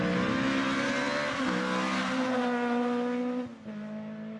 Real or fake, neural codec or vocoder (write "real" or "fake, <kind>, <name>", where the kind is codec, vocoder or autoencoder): real